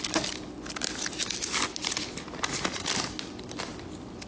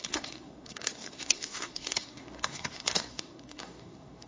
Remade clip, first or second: second